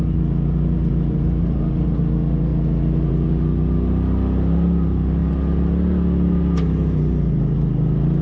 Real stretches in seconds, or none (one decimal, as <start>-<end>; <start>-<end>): 0.0-0.9; 2.0-8.2